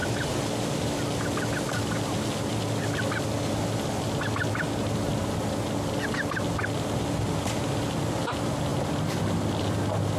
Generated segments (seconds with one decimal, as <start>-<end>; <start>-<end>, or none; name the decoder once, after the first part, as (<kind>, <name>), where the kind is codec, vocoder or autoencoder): none